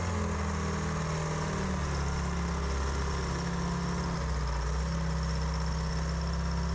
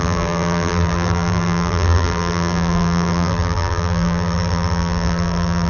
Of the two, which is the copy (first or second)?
second